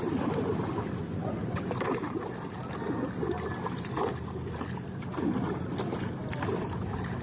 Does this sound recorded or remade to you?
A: recorded